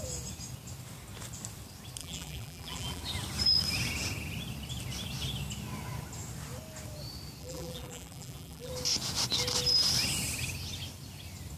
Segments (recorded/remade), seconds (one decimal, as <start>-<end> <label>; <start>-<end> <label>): 0.0-2.0 recorded; 2.0-3.0 remade; 3.0-7.4 recorded; 7.4-8.7 remade; 8.7-11.6 recorded